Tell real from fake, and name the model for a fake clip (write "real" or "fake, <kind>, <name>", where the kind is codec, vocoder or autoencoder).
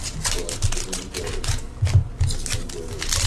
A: real